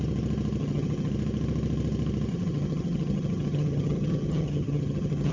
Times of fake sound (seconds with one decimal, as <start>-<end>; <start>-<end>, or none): 0.6-1.1; 2.3-5.3